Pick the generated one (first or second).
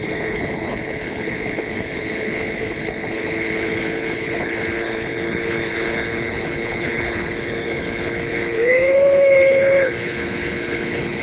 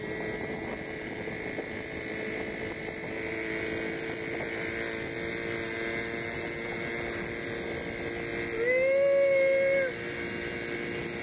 first